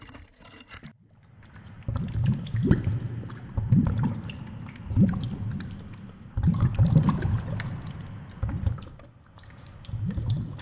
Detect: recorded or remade recorded